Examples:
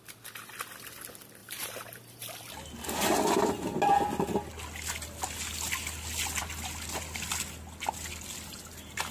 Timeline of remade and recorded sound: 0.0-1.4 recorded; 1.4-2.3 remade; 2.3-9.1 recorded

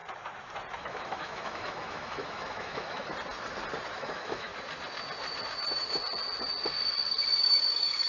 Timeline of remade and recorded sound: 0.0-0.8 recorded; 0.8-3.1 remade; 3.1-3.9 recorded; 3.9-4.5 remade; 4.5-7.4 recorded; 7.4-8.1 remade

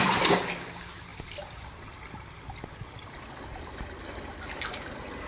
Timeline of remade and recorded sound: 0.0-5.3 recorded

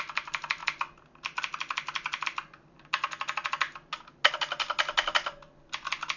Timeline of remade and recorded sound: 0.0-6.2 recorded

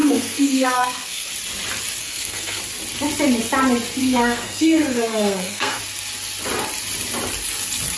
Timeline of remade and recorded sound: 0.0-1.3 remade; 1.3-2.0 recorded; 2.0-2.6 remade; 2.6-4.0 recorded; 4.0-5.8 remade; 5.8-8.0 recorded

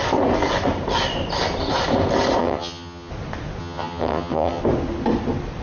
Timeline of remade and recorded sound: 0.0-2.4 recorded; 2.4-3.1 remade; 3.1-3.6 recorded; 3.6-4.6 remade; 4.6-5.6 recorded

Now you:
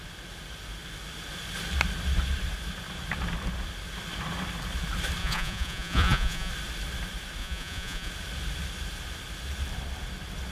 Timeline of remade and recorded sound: 0.0-5.2 recorded; 5.2-6.5 remade; 6.5-7.4 recorded; 7.4-8.1 remade; 8.1-10.5 recorded

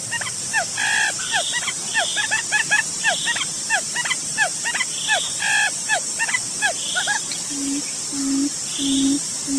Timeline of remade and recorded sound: 0.0-9.6 recorded